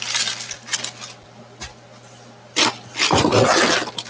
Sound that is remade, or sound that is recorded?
recorded